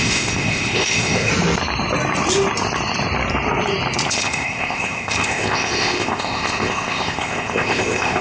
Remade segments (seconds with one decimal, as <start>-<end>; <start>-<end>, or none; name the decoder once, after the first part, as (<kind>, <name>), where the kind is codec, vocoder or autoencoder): 0.0-1.3 (codec, ZipCodec); 4.1-8.2